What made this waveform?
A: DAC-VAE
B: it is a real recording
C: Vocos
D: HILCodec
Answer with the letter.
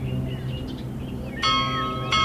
B